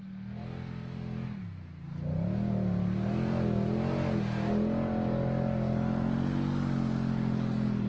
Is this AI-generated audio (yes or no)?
no